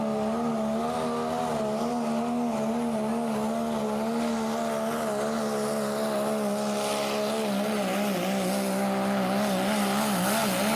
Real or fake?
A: real